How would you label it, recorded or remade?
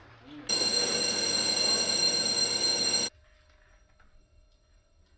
recorded